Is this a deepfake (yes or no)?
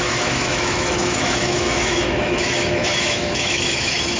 yes